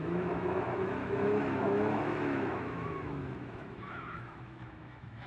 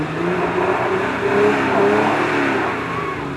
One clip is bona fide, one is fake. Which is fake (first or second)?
first